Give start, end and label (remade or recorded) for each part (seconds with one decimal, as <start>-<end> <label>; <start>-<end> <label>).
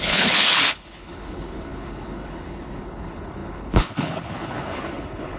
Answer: 0.0-5.4 remade